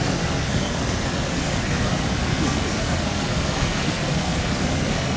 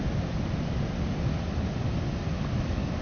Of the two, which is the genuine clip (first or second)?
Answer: second